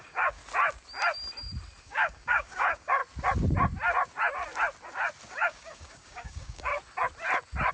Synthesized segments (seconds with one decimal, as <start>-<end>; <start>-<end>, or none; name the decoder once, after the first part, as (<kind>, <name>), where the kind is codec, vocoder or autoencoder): 0.0-0.4 (codec, DAC); 1.8-3.0; 5.3-6.7